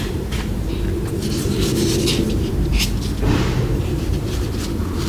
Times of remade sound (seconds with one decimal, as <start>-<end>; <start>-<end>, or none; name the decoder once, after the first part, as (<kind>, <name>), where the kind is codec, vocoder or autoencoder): 0.0-0.7 (vocoder, BigVGAN v2); 2.2-5.1